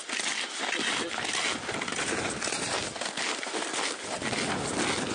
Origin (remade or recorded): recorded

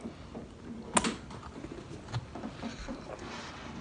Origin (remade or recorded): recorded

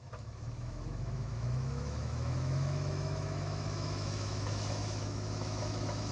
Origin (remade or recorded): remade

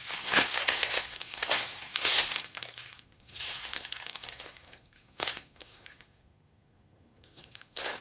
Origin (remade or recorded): remade